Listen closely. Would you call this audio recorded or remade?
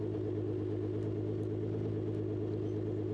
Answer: recorded